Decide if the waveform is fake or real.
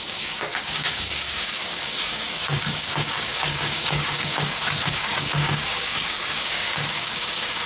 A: fake